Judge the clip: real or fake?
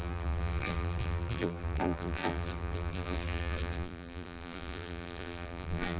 fake